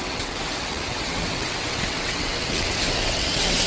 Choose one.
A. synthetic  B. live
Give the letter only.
A